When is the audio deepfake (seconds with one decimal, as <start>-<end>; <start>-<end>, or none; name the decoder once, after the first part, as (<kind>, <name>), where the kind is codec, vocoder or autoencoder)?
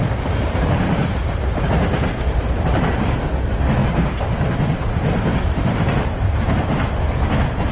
2.0-3.3 (vocoder, BigVGAN v2); 3.8-6.6